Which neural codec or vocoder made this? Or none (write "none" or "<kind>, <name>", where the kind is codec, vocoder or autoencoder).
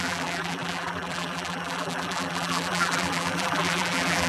vocoder, BigVGAN v2